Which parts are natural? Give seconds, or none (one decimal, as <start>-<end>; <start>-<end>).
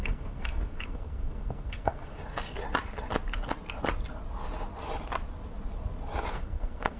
2.1-6.3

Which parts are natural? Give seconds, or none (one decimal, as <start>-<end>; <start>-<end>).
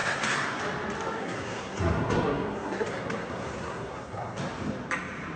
0.6-1.2; 4.4-5.4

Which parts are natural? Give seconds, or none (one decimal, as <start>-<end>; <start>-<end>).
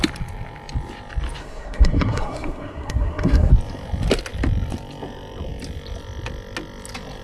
0.0-1.4; 3.5-7.2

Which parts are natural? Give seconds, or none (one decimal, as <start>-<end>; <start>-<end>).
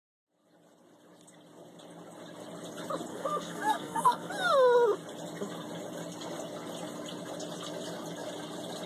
0.0-3.1; 4.3-8.9